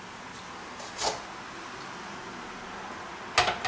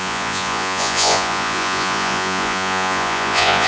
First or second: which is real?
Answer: first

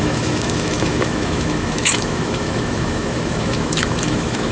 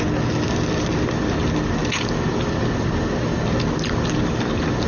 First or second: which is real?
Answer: second